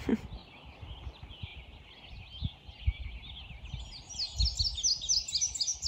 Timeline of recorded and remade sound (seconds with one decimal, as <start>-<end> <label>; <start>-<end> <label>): 0.0-5.9 recorded